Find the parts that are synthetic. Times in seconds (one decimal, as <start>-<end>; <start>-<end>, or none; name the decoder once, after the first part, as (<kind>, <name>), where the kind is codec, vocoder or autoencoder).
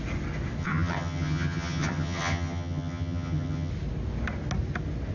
0.6-3.7 (vocoder, HiFi-GAN)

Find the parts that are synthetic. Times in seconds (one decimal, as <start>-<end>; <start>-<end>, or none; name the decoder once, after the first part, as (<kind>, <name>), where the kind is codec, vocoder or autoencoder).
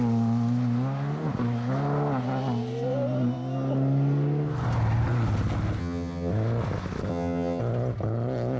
5.8-6.3 (vocoder, HiFi-GAN); 7.1-7.6